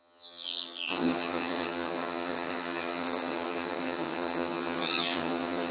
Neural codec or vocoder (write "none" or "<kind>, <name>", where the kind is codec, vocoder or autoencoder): vocoder, HiFi-GAN